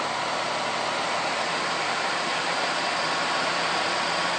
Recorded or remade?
remade